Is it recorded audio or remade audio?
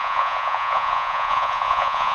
remade